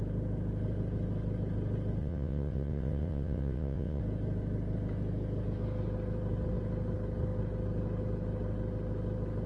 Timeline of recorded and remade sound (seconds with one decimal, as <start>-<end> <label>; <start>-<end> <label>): 0.0-2.0 recorded; 2.0-4.0 remade; 4.0-9.5 recorded